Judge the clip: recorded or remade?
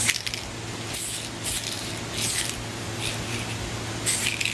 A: recorded